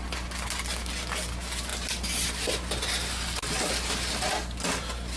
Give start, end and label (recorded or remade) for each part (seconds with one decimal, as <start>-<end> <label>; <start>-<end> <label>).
0.0-5.2 recorded